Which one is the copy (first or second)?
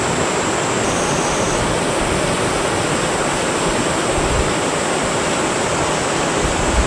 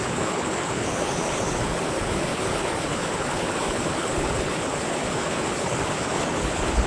second